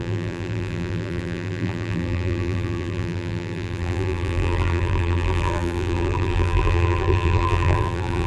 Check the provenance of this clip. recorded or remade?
remade